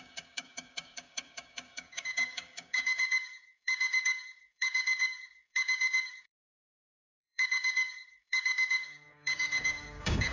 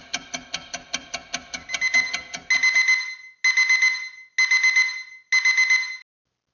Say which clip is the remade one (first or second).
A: first